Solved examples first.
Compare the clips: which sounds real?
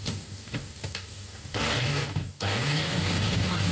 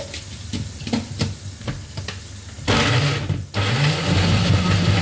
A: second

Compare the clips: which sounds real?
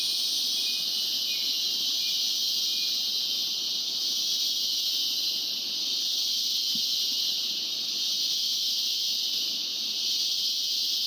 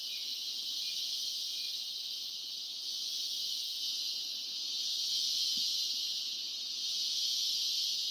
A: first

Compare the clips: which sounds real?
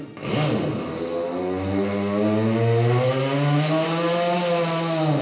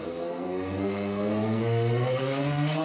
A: first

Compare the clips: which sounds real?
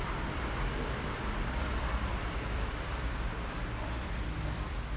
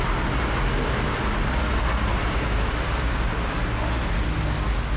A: second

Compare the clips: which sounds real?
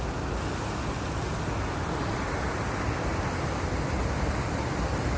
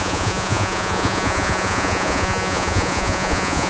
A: first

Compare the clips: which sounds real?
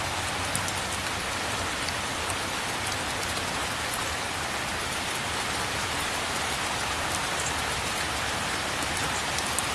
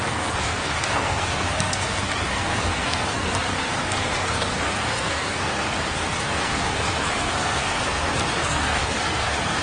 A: first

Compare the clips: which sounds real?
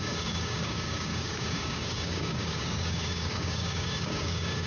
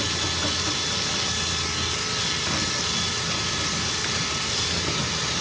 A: second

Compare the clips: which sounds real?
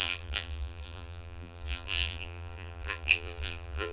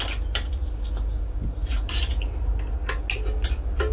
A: second